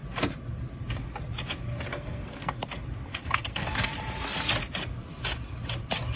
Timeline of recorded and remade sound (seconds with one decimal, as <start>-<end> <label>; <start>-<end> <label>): 0.0-1.9 recorded; 1.9-2.6 remade; 2.6-3.1 recorded; 3.1-3.9 remade; 3.9-6.2 recorded

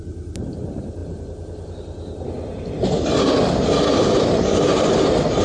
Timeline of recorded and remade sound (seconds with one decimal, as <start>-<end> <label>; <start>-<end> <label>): 0.0-5.4 recorded

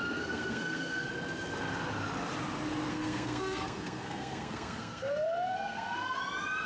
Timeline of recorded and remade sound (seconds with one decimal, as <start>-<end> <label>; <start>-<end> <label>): 0.0-1.1 remade; 1.1-2.9 recorded; 2.9-6.2 remade; 6.2-6.7 recorded

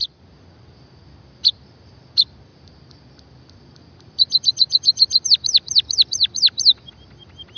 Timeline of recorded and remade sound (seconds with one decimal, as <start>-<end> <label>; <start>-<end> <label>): 0.0-2.5 recorded; 2.5-6.9 remade; 6.9-7.6 recorded